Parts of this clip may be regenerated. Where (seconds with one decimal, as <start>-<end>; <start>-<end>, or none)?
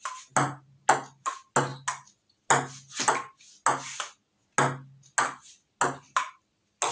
none